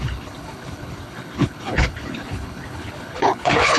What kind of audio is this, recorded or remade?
remade